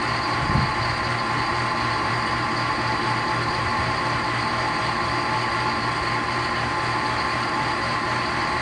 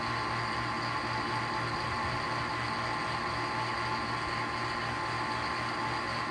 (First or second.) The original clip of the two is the second